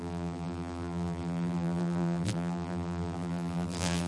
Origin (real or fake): fake